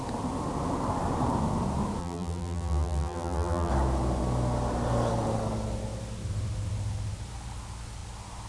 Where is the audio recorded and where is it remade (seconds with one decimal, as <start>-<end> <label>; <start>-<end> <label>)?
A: 0.0-2.0 recorded; 2.0-3.7 remade; 3.7-8.5 recorded